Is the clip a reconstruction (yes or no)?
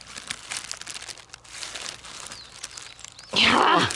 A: no